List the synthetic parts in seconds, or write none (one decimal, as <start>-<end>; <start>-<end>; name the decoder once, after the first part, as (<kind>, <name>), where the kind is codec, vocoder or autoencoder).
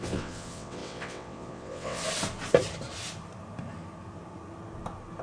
0.0-2.0 (vocoder, WaveNeXt)